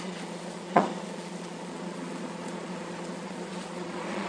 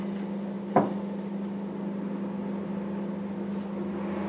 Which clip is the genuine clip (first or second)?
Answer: second